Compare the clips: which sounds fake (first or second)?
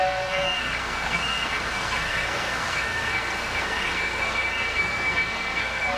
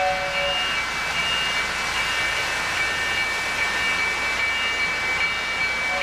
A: first